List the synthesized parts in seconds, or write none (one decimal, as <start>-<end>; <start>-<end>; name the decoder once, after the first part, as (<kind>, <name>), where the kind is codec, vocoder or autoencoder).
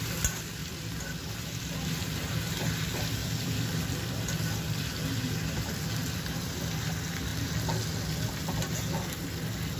0.6-1.6 (vocoder, BigVGAN v2); 3.2-5.2